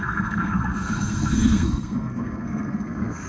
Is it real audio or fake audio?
fake